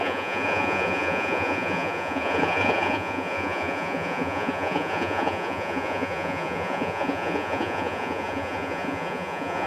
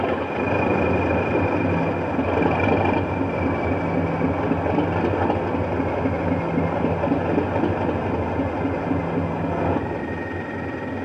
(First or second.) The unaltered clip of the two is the second